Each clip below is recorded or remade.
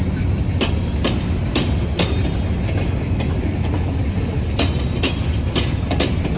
recorded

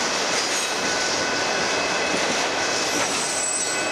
recorded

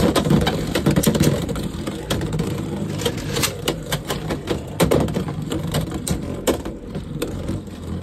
remade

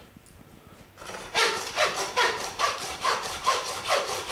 remade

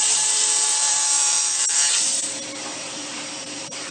remade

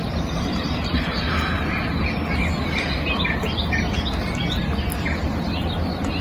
recorded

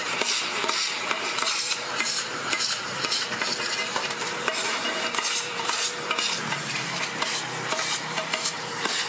remade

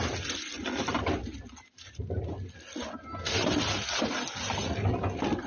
recorded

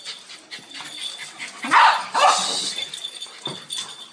recorded